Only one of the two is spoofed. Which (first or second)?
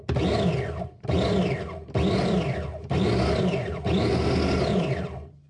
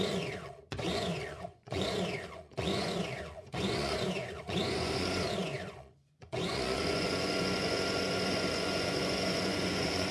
second